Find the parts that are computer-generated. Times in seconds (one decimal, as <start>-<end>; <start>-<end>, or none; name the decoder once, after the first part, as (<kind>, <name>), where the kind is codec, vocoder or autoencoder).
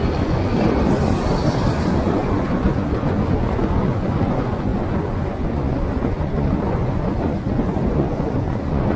0.0-0.5 (vocoder, Vocos); 1.7-9.0